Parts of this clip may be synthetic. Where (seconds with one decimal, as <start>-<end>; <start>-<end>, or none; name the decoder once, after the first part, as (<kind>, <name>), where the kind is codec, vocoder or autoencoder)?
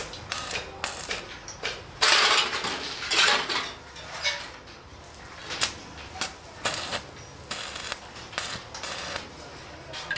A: none